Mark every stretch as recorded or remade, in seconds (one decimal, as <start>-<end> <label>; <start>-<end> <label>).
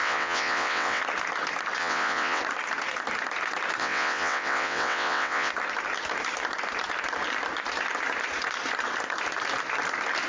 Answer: 0.0-1.0 remade; 1.0-1.8 recorded; 1.8-2.4 remade; 2.4-3.8 recorded; 3.8-5.5 remade; 5.5-10.3 recorded